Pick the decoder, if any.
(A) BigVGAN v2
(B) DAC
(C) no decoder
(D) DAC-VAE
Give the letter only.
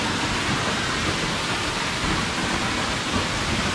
C